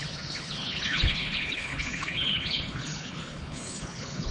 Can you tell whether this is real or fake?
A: fake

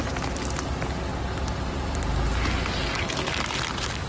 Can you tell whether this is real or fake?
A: real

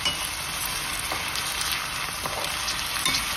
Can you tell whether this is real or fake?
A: real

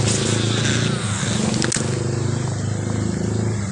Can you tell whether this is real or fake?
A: real